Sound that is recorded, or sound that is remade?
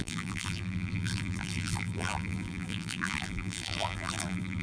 remade